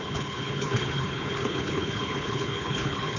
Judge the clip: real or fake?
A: fake